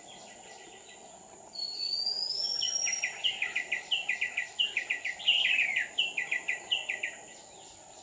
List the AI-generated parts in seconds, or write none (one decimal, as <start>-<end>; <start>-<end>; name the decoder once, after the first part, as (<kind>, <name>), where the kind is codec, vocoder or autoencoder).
none